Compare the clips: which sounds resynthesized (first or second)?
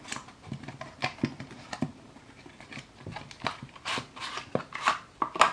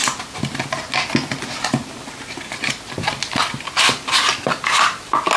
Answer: first